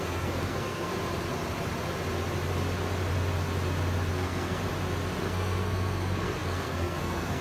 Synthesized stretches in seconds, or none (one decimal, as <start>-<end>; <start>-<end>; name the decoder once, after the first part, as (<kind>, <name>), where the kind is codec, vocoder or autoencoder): 0.0-0.9 (codec, SNAC); 4.1-4.6; 5.2-7.4